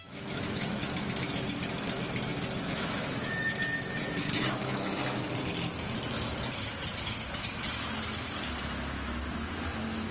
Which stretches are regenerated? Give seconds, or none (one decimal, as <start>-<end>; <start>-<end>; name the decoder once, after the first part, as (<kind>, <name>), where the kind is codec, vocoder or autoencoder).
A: 0.0-5.0 (autoencoder, DAC-VAE); 8.6-10.1